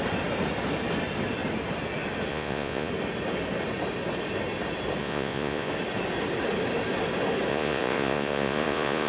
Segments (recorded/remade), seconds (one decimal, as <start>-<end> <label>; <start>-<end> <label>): 0.0-2.3 recorded; 2.3-2.9 remade; 2.9-5.0 recorded; 5.0-5.7 remade; 5.7-7.5 recorded; 7.5-9.1 remade